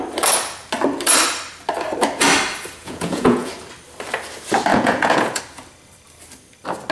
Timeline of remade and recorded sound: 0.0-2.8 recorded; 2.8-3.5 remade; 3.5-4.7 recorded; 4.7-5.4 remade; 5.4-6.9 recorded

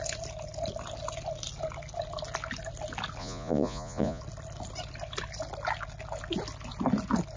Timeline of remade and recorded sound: 0.0-3.2 recorded; 3.2-4.2 remade; 4.2-7.4 recorded

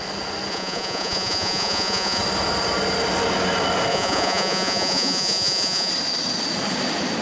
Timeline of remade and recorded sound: 0.0-0.5 recorded; 0.5-2.2 remade; 2.2-3.9 recorded; 3.9-5.9 remade; 5.9-7.2 recorded

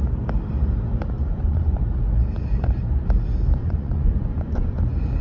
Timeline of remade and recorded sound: 0.0-1.2 recorded; 1.2-1.8 remade; 1.8-3.6 recorded; 3.6-4.8 remade; 4.8-5.2 recorded

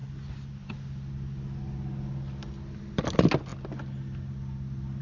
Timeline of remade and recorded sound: 0.0-5.0 recorded

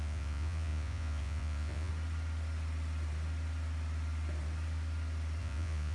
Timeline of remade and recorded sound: 0.0-1.9 remade; 1.9-5.4 recorded; 5.4-5.9 remade

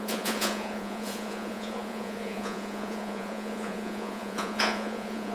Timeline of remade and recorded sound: 0.0-5.3 remade

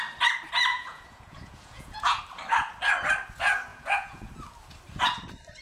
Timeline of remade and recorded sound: 0.0-0.7 recorded; 0.7-2.2 remade; 2.2-3.7 recorded; 3.7-4.3 remade; 4.3-5.6 recorded